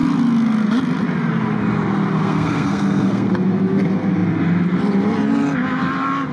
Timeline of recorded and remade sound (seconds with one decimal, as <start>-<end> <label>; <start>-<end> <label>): 0.0-2.2 recorded; 2.2-3.3 remade; 3.3-6.3 recorded